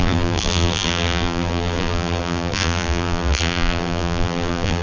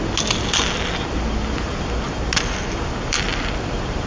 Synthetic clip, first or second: first